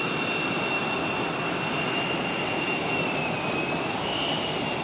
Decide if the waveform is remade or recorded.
recorded